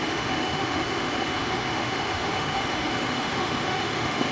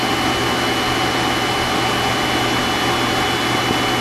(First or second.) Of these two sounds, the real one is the second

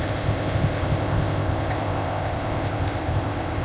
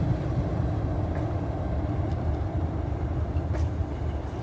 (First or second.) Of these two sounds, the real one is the second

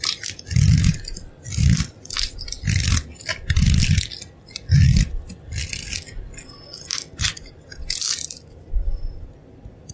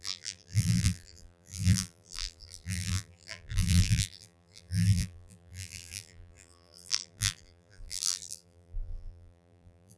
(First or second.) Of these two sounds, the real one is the first